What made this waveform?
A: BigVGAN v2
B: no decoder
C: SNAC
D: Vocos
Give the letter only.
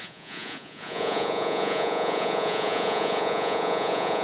D